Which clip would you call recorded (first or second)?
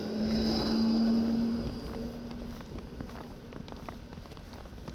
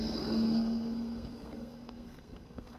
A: first